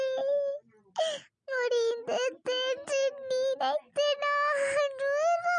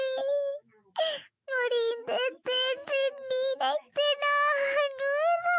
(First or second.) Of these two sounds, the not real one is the second